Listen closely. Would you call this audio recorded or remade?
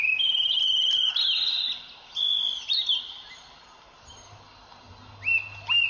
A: recorded